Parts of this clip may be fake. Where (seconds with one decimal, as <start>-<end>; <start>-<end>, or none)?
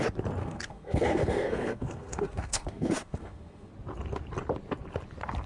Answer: 0.4-3.7